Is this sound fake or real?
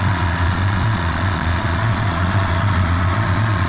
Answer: fake